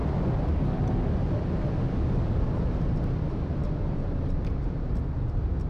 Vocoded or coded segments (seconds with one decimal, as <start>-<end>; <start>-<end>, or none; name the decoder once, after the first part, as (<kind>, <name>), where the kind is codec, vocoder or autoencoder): 3.5-5.0 (vocoder, BigVGAN v2)